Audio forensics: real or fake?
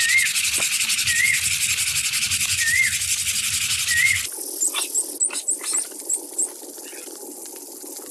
real